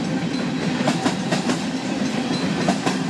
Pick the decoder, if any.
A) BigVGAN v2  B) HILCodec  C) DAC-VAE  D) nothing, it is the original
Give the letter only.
A